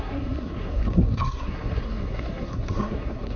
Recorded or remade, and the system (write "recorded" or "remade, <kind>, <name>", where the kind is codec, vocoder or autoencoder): remade, codec, SNAC